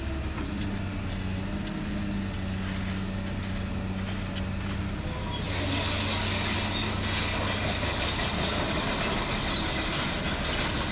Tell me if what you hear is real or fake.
real